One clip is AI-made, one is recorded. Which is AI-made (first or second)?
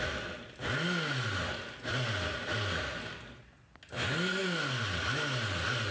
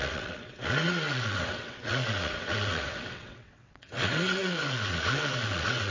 second